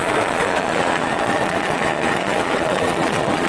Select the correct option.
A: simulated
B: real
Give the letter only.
A